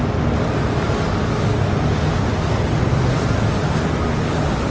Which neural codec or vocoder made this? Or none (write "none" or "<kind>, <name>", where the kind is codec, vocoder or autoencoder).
none